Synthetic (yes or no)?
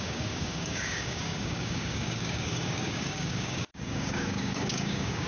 yes